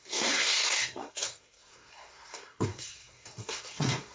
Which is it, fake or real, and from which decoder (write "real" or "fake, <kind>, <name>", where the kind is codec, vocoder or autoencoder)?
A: fake, codec, SNAC